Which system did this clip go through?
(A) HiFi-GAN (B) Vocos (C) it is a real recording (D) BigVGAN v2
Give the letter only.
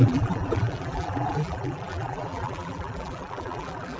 D